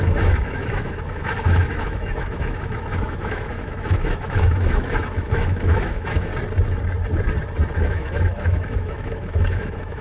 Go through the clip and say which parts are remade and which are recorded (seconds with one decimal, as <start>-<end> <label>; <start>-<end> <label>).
0.0-6.3 remade; 6.3-7.8 recorded; 7.8-10.0 remade